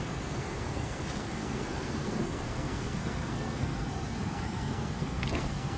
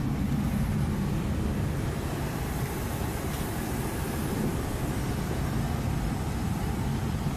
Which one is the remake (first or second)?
first